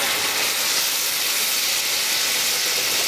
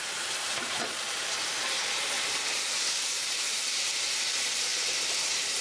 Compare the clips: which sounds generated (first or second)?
second